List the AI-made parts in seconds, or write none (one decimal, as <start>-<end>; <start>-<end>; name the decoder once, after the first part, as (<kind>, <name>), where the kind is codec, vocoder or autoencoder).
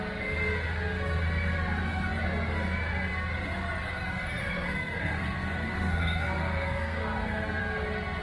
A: 4.4-7.6 (codec, SNAC)